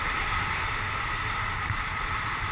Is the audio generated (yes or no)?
no